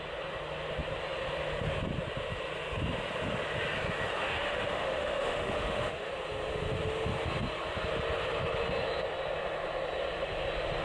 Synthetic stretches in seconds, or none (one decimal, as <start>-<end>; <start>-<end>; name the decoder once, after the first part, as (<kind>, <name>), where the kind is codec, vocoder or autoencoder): 4.2-6.1 (autoencoder, DAC-VAE)

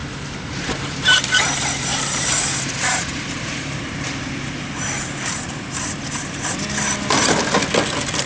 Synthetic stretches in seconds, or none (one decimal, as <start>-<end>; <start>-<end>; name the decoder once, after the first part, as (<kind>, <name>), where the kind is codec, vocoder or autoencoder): 0.0-1.4 (vocoder, BigVGAN v2); 1.9-6.6

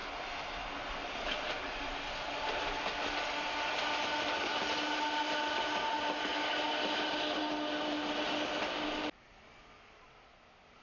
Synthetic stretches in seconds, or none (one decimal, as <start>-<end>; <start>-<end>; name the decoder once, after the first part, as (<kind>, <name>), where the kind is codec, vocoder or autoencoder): none

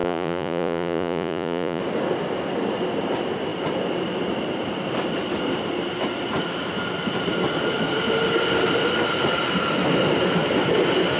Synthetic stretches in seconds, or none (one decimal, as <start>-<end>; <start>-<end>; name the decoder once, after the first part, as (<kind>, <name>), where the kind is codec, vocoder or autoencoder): 0.0-1.8 (vocoder, Vocos)